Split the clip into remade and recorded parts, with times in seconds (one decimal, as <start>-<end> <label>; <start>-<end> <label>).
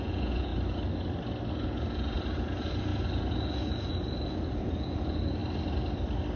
0.0-0.5 remade; 0.5-1.5 recorded; 1.5-5.4 remade; 5.4-6.4 recorded